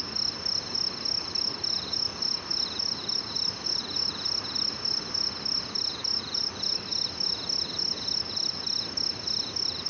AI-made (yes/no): no